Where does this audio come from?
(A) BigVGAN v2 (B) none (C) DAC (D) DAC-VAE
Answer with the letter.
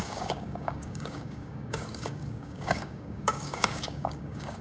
C